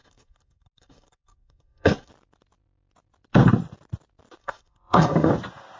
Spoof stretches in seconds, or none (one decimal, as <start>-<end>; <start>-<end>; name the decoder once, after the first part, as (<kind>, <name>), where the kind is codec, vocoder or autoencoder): 0.0-2.1 (codec, SNAC); 4.4-5.3